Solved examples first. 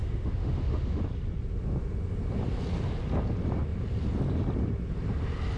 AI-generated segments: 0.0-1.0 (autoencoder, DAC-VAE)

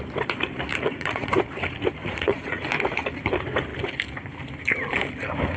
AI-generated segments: 0.7-1.3 (vocoder, Vocos); 2.0-2.6

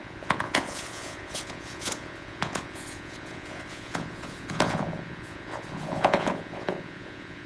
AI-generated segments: 0.0-7.5 (vocoder, Vocos)

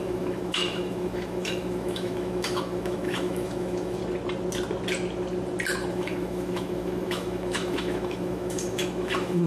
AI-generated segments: 0.0-4.0 (autoencoder, DAC-VAE); 5.9-9.5

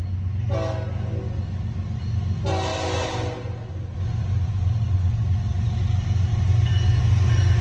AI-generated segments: none

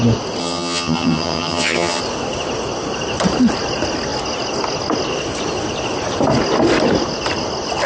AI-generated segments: 0.4-2.0 (vocoder, HiFi-GAN)